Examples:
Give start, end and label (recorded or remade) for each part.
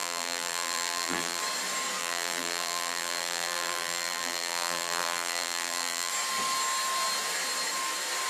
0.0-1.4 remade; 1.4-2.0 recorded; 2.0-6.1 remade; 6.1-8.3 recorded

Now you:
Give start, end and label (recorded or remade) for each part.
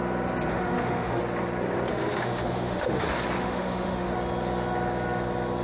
0.0-0.5 recorded; 0.5-1.2 remade; 1.2-1.9 recorded; 1.9-3.0 remade; 3.0-3.4 recorded; 3.4-4.1 remade; 4.1-5.6 recorded